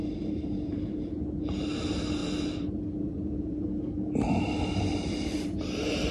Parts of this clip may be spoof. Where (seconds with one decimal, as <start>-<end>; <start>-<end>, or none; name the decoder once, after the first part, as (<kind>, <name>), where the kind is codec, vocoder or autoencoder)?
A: 0.0-1.2 (vocoder, BigVGAN v2); 2.2-5.6